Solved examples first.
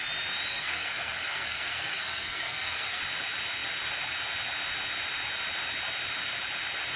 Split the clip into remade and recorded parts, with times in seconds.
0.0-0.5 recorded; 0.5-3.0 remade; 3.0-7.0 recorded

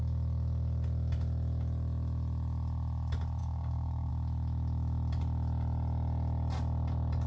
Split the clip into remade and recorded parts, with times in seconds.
0.0-3.4 recorded; 3.4-4.1 remade; 4.1-7.3 recorded

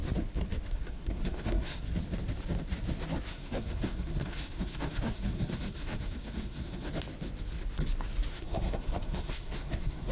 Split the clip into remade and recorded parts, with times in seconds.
0.0-0.7 recorded; 0.7-1.9 remade; 1.9-3.3 recorded; 3.3-6.9 remade; 6.9-8.3 recorded; 8.3-10.1 remade

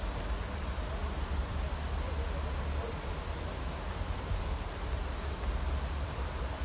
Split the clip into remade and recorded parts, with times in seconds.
0.0-6.6 recorded